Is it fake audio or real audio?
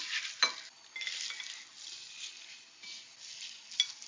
real